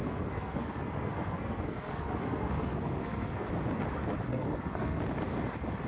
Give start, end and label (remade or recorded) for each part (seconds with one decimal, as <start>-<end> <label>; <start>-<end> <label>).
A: 0.0-3.5 remade; 3.5-4.3 recorded; 4.3-5.0 remade; 5.0-5.9 recorded